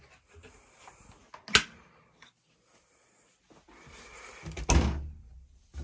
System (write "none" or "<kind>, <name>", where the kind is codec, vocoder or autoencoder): none